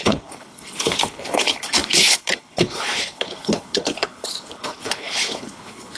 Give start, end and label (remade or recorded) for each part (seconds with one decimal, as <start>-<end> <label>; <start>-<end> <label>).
0.0-6.0 remade